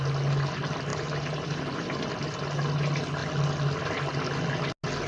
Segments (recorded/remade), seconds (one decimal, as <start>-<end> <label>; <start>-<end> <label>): 0.0-0.9 recorded; 0.9-2.1 remade; 2.1-5.1 recorded